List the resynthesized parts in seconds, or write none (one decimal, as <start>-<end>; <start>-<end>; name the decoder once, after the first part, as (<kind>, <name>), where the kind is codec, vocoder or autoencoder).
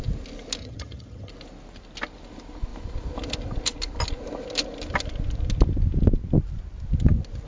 0.6-1.3 (vocoder, HiFi-GAN)